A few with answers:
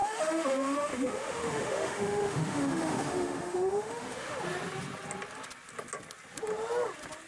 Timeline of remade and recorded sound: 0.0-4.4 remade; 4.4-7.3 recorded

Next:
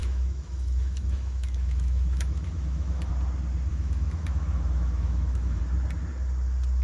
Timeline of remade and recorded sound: 0.0-3.1 remade; 3.1-3.7 recorded; 3.7-5.6 remade; 5.6-6.8 recorded

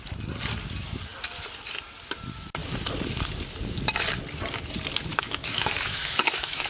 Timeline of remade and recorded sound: 0.0-5.1 recorded; 5.1-6.7 remade